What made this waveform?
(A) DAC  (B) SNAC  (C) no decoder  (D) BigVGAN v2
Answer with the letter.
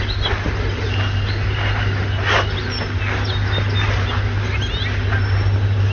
C